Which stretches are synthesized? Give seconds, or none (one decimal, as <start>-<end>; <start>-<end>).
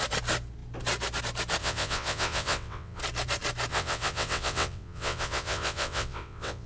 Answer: 1.6-3.0; 3.7-6.7